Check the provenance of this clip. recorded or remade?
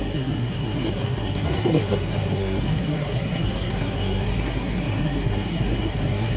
remade